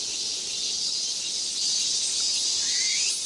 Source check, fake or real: real